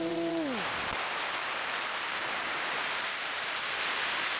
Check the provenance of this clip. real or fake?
fake